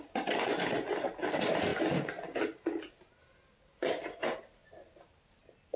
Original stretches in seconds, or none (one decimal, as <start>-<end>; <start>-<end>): 0.0-5.8